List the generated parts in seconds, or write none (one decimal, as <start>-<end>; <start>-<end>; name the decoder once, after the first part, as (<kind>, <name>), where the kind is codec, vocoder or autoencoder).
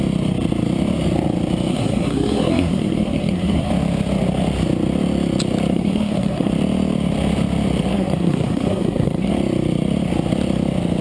1.7-3.7 (codec, SNAC); 5.7-6.5; 7.9-9.3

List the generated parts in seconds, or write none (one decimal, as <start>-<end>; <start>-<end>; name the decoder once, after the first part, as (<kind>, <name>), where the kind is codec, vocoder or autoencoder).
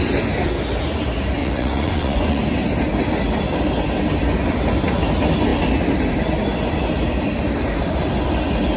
1.4-2.4 (vocoder, Vocos)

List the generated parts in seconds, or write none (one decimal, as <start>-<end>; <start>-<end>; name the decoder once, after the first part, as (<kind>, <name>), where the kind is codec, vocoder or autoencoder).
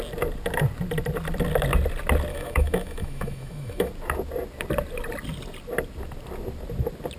2.3-3.9 (autoencoder, DAC-VAE)